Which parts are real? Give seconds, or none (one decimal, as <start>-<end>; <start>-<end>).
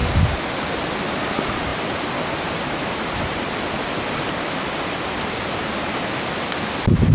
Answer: 0.0-7.1